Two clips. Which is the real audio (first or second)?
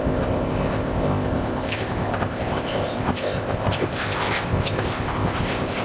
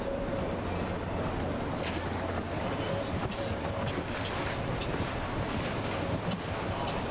second